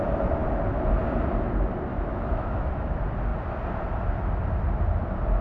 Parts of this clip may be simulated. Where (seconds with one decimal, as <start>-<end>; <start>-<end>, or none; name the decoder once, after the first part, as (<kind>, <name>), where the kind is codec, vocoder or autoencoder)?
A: 1.9-2.7 (autoencoder, DAC-VAE)